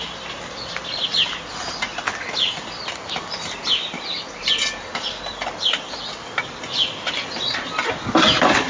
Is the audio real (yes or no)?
yes